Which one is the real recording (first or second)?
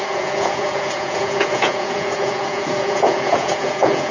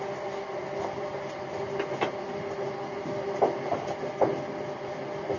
second